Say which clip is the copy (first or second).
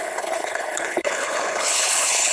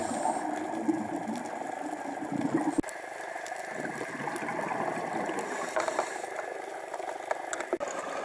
first